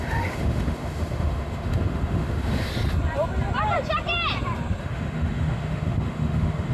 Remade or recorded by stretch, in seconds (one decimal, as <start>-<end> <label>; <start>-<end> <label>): 0.0-2.7 remade; 2.7-4.8 recorded; 4.8-6.7 remade